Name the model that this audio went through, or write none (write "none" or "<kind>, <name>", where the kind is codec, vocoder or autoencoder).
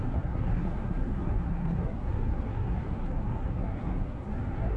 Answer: codec, SNAC